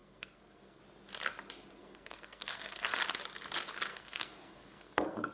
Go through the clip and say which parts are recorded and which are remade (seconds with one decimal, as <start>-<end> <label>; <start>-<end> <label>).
0.0-0.8 remade; 0.8-1.8 recorded; 1.8-3.0 remade; 3.0-3.9 recorded; 3.9-5.3 remade